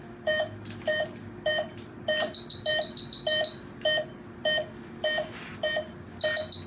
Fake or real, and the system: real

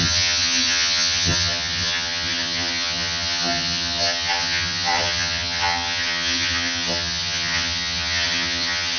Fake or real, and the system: fake, vocoder, HiFi-GAN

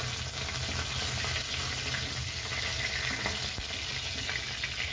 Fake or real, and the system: real